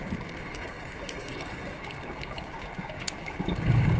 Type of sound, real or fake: fake